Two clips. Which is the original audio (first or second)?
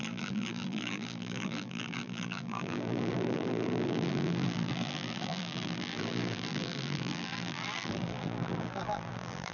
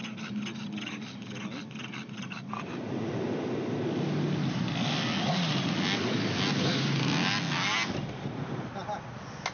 second